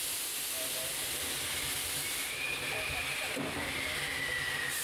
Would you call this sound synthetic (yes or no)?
no